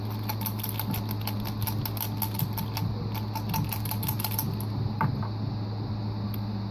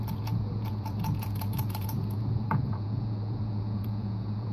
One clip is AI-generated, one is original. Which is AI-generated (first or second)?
second